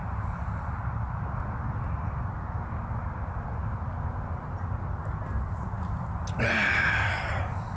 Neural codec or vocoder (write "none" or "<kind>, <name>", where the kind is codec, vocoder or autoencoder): none